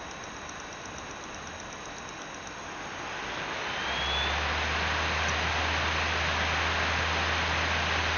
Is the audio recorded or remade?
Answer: recorded